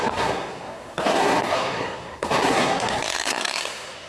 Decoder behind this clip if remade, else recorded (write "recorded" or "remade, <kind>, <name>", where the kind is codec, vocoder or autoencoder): remade, codec, SNAC